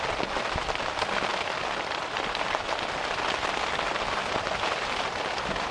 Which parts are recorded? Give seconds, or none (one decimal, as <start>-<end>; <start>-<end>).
0.0-5.7